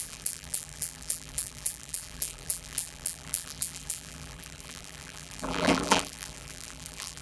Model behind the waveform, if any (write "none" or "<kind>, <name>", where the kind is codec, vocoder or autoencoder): vocoder, BigVGAN v2